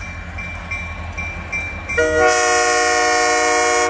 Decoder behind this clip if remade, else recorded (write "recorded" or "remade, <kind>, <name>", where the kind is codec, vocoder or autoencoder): recorded